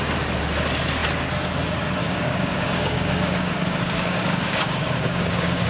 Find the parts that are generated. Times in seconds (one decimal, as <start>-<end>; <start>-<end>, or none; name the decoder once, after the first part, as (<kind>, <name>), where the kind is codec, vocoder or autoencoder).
2.0-5.7 (codec, DAC)